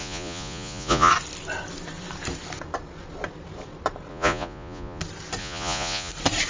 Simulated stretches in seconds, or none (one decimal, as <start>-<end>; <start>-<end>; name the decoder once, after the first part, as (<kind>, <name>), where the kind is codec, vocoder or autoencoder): 0.0-1.1 (vocoder, Vocos); 4.1-5.0; 5.4-6.1